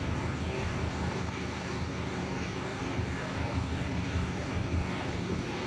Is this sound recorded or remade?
remade